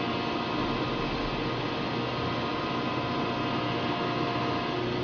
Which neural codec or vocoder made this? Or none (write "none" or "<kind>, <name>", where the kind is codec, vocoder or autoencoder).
none